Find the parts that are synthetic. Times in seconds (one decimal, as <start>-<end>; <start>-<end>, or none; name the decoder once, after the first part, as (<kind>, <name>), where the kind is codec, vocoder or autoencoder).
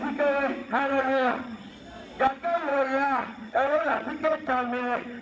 0.6-1.7 (vocoder, HiFi-GAN); 2.7-5.2